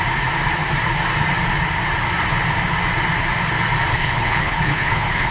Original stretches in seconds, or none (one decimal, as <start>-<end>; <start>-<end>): 0.0-3.9